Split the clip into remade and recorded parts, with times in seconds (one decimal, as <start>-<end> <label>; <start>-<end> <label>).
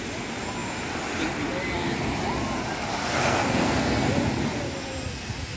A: 0.0-3.0 recorded; 3.0-4.1 remade; 4.1-5.6 recorded